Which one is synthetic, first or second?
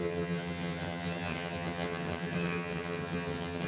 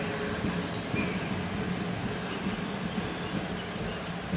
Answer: first